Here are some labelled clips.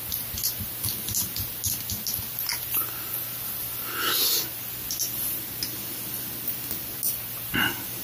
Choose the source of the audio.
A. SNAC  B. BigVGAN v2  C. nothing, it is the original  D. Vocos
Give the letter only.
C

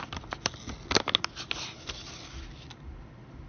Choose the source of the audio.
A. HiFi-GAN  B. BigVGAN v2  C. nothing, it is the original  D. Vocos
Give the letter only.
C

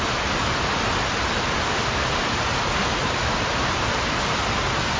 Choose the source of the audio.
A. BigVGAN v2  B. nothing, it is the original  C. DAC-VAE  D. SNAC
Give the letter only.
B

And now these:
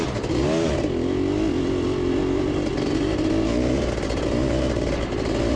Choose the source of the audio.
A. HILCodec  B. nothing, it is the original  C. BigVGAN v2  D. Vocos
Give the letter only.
B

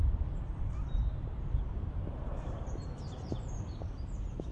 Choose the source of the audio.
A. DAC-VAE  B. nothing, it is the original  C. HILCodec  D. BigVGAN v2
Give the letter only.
D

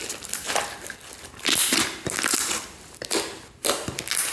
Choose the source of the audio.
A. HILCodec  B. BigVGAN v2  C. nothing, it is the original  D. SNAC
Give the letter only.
C